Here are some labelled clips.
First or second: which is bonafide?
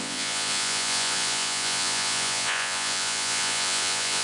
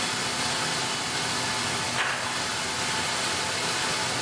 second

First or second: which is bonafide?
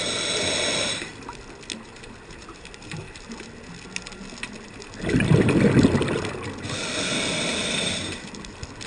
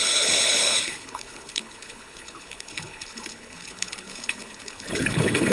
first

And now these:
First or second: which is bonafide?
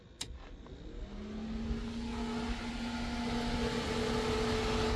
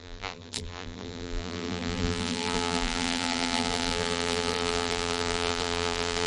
first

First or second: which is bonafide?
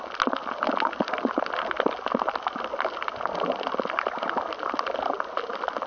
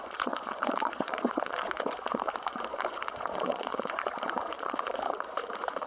first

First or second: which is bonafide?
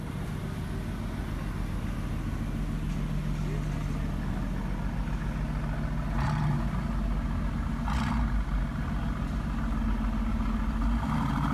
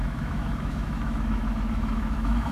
first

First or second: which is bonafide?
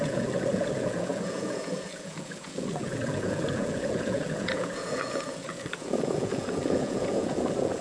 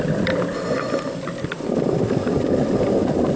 second